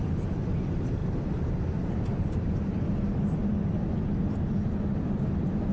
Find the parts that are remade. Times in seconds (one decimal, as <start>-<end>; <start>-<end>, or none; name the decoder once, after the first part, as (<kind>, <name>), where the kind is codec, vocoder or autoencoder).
1.0-2.5 (vocoder, BigVGAN v2)